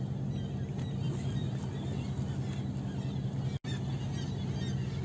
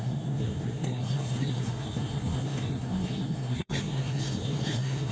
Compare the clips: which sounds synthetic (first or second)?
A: second